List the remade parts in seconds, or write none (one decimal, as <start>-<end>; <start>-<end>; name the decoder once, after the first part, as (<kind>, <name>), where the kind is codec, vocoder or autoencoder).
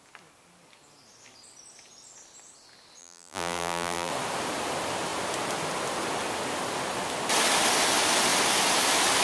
3.0-4.1 (vocoder, BigVGAN v2)